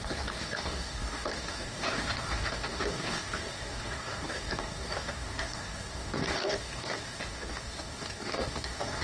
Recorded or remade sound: remade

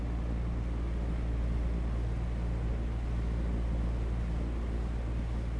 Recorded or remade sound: recorded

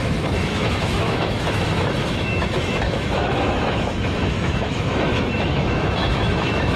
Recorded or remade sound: remade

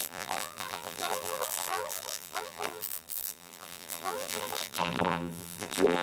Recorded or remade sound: remade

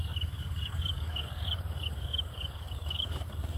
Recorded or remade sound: remade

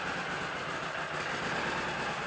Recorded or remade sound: recorded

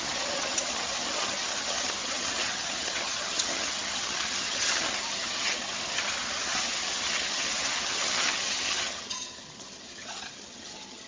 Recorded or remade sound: remade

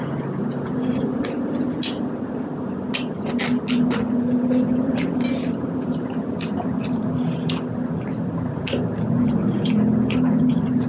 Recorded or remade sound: recorded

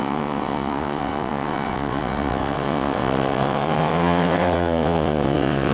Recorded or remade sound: remade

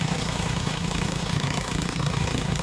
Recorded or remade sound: remade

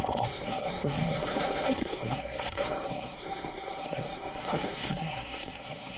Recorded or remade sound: remade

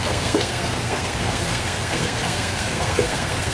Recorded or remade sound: remade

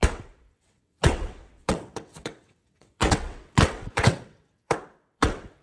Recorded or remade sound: remade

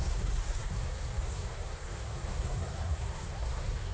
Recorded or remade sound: remade